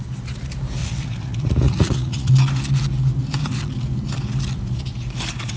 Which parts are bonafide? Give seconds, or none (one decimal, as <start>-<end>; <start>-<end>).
0.0-0.8; 2.3-5.6